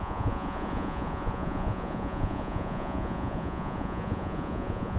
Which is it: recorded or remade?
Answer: remade